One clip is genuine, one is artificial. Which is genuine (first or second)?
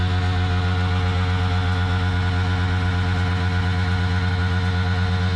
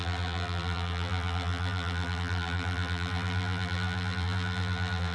first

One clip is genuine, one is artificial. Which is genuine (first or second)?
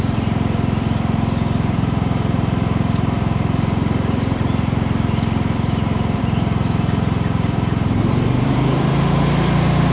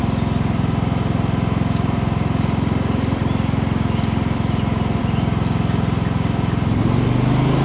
second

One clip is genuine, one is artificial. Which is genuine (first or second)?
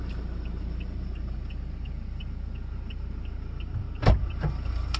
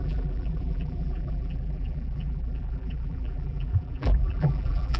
first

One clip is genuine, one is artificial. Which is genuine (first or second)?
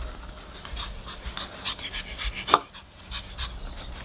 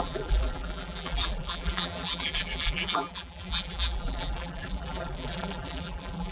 first